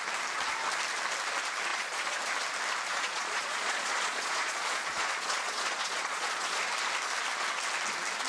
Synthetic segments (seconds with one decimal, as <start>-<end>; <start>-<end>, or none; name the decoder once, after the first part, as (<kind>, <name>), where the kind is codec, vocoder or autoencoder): 1.7-2.2 (vocoder, Vocos); 2.9-6.6